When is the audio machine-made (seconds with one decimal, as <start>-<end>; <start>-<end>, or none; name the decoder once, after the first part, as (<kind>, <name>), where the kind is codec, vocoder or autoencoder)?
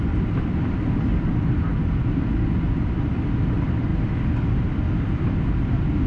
0.0-1.7 (vocoder, BigVGAN v2); 3.1-3.9; 4.5-6.1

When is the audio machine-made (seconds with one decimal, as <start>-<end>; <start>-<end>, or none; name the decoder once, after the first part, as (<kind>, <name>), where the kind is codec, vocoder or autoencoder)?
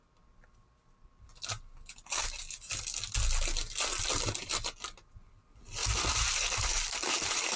5.8-7.6 (vocoder, BigVGAN v2)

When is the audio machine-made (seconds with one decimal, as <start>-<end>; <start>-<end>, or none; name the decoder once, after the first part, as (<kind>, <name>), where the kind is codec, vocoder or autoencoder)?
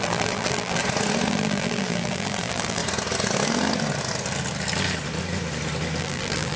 0.0-0.8 (vocoder, BigVGAN v2); 1.3-2.8; 6.0-6.6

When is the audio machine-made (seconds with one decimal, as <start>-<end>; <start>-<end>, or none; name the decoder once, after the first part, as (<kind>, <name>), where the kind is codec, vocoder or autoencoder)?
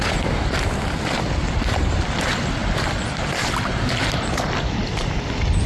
none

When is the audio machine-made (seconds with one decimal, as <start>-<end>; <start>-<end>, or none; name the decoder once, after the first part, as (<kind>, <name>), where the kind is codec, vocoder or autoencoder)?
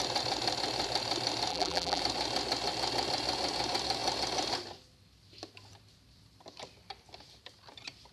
1.5-2.0 (vocoder, BigVGAN v2)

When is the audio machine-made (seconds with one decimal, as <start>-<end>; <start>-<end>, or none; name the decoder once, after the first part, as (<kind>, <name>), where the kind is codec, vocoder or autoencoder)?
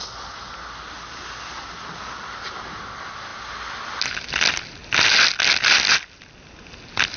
none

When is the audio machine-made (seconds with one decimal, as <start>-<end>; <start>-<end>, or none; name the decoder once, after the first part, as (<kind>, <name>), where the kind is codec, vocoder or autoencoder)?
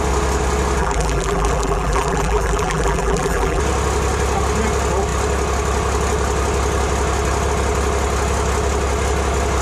0.8-3.6 (vocoder, BigVGAN v2)